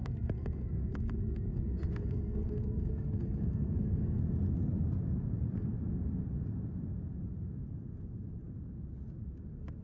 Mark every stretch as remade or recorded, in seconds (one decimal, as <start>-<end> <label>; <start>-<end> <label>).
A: 0.0-4.2 remade; 4.2-9.8 recorded